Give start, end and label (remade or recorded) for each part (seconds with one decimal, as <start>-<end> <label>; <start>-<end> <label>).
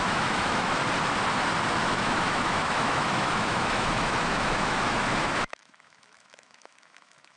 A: 0.0-0.8 remade; 0.8-1.8 recorded; 1.8-7.4 remade